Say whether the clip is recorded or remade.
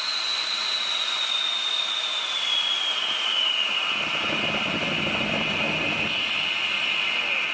recorded